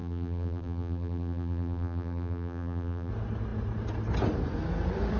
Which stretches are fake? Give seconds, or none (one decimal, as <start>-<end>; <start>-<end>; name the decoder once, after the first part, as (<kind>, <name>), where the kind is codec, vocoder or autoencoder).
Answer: 0.0-3.1 (vocoder, BigVGAN v2)